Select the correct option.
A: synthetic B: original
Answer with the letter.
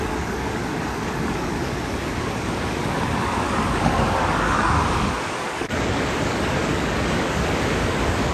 A